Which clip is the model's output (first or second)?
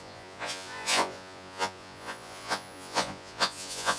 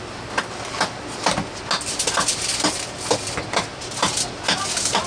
first